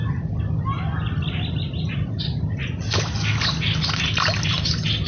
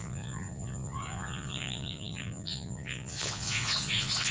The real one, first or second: first